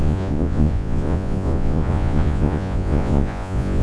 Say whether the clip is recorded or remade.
remade